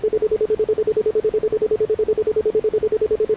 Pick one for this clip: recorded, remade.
remade